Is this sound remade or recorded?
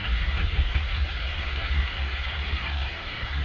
remade